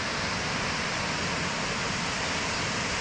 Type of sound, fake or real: real